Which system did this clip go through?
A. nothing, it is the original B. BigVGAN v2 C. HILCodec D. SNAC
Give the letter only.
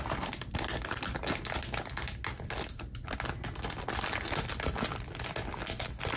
A